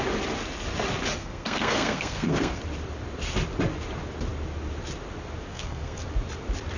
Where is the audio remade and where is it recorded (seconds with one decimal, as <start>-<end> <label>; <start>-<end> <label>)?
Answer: 0.0-1.2 recorded; 1.2-2.6 remade; 2.6-5.5 recorded; 5.5-6.0 remade; 6.0-6.8 recorded